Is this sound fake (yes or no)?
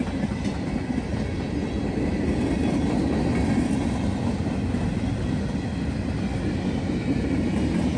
no